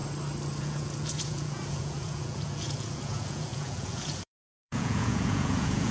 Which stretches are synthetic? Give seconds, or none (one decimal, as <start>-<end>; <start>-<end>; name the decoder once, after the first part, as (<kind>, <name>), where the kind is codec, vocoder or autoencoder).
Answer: 0.6-5.9 (vocoder, Vocos)